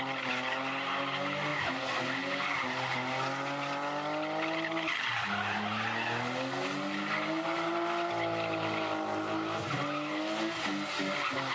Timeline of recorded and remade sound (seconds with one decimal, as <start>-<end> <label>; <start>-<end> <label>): 0.0-11.5 recorded